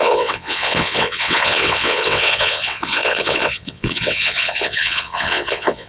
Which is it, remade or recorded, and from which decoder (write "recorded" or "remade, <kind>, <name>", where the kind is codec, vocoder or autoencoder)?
remade, vocoder, WaveNeXt